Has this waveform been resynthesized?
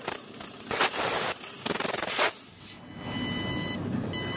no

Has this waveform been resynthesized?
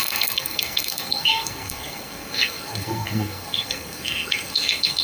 yes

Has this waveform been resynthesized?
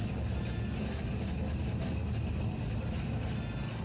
no